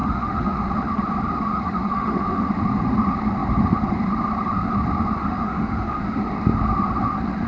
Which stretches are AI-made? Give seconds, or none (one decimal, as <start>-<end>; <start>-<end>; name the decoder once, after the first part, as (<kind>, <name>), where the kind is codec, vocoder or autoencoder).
0.0-0.7 (autoencoder, DAC-VAE); 1.5-2.5; 5.2-6.0